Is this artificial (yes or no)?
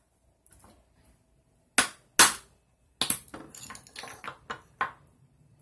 no